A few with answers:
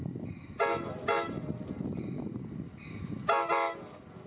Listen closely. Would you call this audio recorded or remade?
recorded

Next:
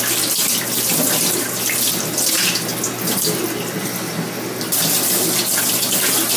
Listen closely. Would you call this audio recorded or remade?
recorded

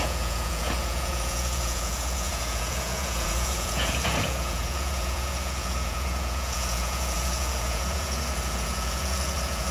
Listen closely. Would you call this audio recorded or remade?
remade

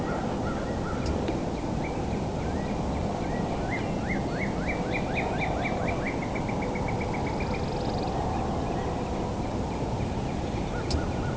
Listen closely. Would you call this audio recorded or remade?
recorded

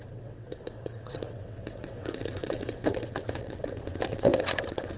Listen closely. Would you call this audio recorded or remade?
remade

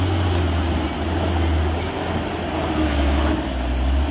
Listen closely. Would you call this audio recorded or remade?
recorded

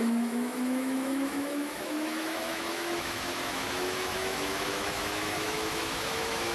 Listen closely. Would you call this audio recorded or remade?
remade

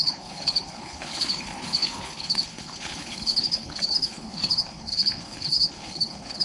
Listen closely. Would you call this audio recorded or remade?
remade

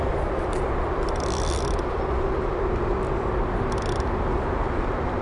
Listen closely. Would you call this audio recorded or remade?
recorded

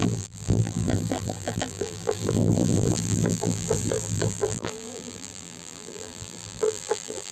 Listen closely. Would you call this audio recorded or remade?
remade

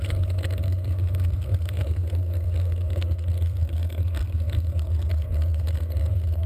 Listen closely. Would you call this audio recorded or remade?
remade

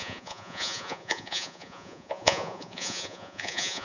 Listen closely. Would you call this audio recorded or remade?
remade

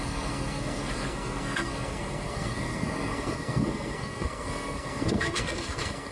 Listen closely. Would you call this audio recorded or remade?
remade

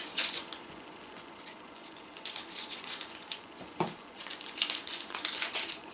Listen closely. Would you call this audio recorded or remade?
remade